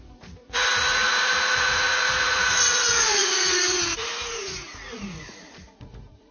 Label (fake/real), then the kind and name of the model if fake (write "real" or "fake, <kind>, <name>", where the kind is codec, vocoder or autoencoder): fake, vocoder, Vocos